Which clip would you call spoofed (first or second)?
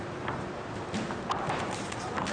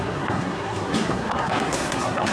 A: second